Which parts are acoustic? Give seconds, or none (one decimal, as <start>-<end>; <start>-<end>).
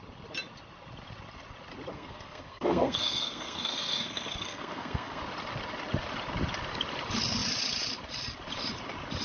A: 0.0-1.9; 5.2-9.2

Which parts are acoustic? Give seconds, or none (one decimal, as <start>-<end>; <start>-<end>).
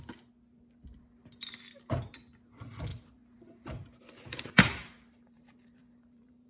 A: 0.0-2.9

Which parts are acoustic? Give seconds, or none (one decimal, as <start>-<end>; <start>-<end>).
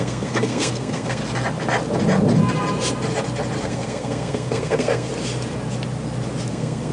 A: 1.2-3.6; 5.1-6.5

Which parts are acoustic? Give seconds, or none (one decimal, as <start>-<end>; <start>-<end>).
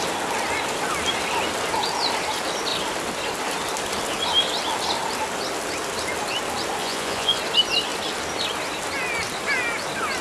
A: 0.0-6.8; 7.4-10.2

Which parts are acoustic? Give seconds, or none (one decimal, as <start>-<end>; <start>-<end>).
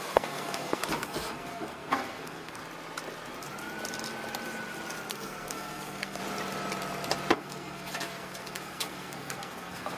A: 2.6-5.1; 6.2-7.3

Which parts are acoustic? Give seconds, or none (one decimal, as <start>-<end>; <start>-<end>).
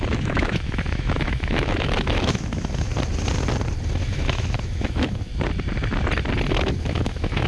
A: 2.9-4.1; 5.3-6.8